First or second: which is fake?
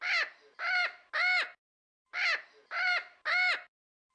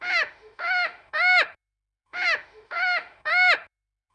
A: second